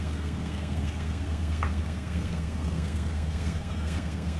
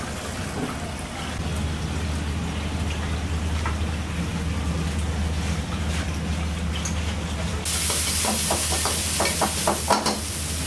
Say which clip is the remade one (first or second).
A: first